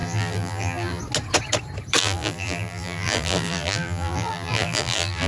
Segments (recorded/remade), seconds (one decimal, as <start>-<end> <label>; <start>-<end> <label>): 0.0-1.0 remade; 1.0-2.0 recorded; 2.0-5.3 remade